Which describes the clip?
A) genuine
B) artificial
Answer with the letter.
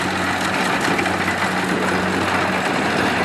A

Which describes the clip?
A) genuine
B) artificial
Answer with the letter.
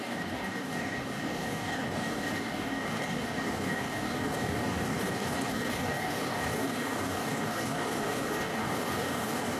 B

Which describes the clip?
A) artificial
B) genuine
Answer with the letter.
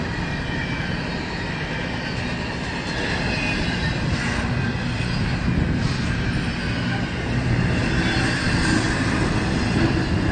B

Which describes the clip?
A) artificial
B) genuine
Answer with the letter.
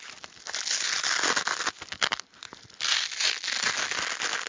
B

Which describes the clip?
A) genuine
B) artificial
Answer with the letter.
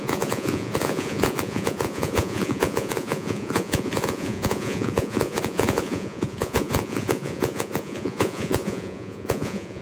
B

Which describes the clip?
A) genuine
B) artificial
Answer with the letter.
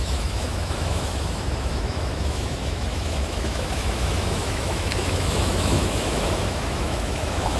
B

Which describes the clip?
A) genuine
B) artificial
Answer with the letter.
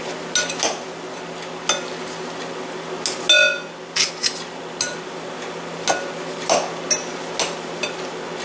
A